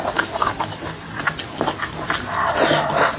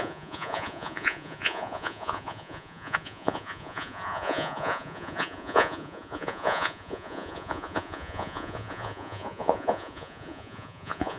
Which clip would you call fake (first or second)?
second